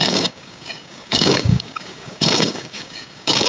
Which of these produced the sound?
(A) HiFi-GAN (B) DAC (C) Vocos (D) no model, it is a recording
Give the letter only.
B